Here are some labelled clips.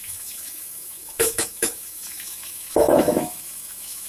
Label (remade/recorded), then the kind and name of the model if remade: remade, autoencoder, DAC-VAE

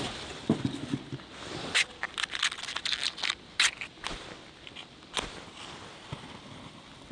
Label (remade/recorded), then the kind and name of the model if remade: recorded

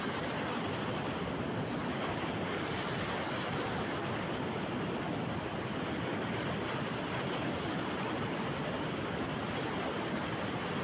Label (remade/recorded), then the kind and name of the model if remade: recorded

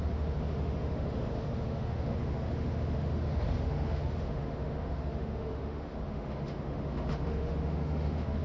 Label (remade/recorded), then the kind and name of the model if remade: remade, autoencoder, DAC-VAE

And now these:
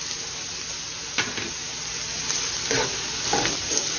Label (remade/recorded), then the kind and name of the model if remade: recorded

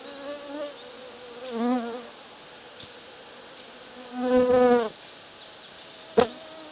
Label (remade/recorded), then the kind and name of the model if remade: recorded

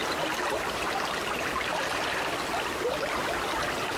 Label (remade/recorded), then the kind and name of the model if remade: recorded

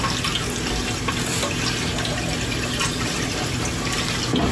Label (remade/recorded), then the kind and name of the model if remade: recorded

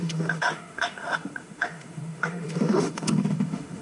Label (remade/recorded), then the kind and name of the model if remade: remade, autoencoder, DAC-VAE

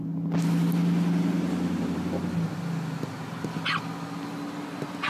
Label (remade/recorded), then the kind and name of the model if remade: recorded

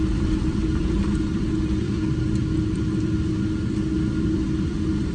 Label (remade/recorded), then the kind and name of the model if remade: recorded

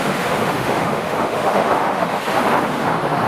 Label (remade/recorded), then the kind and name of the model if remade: remade, autoencoder, DAC-VAE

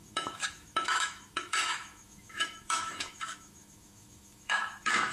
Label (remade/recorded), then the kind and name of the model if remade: remade, autoencoder, DAC-VAE